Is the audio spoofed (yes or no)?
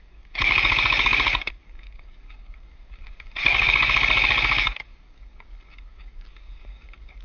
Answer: yes